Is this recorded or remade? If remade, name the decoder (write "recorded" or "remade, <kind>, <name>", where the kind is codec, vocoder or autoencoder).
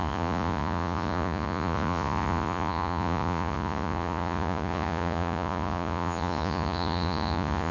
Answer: remade, vocoder, Vocos